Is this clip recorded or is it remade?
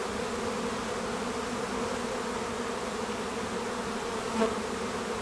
recorded